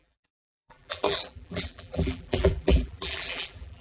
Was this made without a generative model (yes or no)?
no